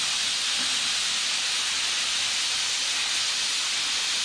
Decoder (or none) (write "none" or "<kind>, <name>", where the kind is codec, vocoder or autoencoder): none